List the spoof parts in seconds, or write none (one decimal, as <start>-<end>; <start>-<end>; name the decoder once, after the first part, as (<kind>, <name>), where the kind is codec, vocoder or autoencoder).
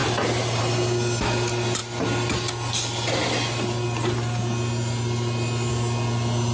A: none